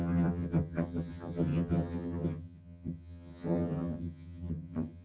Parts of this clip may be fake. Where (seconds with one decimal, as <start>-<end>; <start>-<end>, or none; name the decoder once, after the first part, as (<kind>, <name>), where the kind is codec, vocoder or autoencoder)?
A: 0.0-5.0 (vocoder, HiFi-GAN)